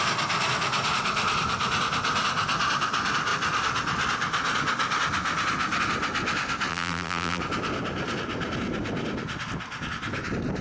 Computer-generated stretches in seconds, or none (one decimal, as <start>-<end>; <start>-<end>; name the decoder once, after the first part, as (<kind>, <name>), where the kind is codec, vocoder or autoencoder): 6.7-7.4 (vocoder, BigVGAN v2)